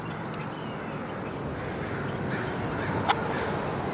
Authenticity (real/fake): real